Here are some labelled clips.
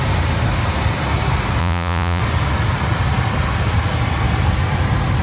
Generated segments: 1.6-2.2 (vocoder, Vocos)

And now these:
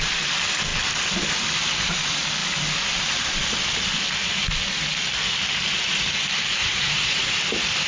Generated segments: 6.6-7.3 (vocoder, Vocos)

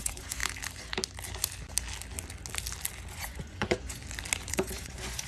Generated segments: 0.0-0.4 (vocoder, Vocos); 3.1-4.0; 4.5-5.3

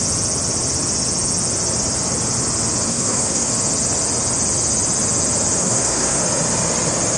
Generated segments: 2.9-3.5 (codec, SNAC); 5.6-6.2

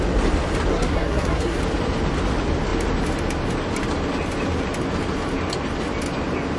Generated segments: 0.7-1.6 (codec, SNAC)

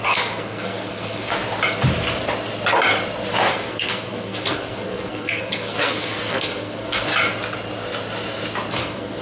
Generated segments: 0.0-1.4 (codec, SNAC); 3.5-7.1; 8.7-9.2

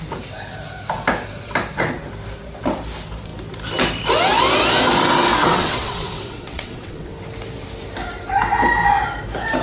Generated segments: 5.4-7.1 (vocoder, WaveNeXt)

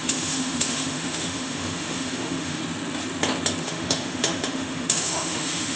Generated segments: 0.0-2.6 (autoencoder, DAC-VAE); 3.6-5.8